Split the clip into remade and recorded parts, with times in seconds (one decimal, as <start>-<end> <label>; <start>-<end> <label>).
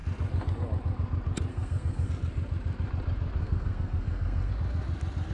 0.0-1.5 recorded; 1.5-2.1 remade; 2.1-3.4 recorded; 3.4-4.5 remade; 4.5-5.3 recorded